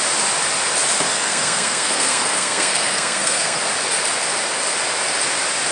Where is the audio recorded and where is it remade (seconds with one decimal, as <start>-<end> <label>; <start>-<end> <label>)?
0.0-1.1 recorded; 1.1-3.6 remade; 3.6-5.7 recorded

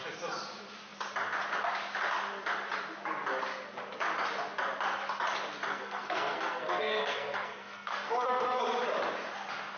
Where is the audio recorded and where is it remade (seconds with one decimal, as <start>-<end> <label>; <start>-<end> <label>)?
0.0-5.7 recorded; 5.7-8.6 remade; 8.6-9.8 recorded